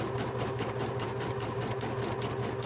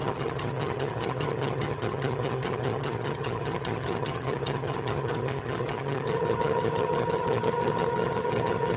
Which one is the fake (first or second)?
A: second